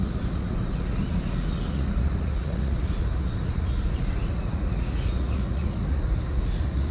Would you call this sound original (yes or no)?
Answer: no